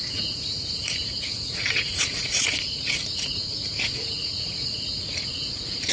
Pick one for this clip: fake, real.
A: fake